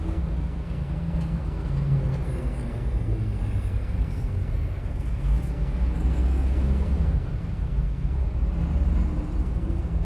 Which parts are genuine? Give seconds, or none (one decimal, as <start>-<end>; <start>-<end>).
8.3-9.4